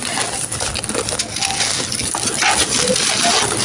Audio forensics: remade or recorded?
recorded